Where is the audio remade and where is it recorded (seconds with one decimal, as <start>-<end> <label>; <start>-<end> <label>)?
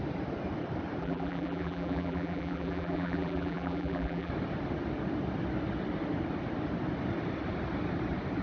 0.0-1.0 recorded; 1.0-4.3 remade; 4.3-8.4 recorded